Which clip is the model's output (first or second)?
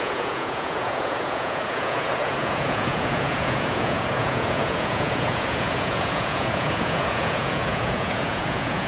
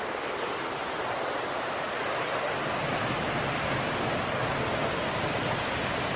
first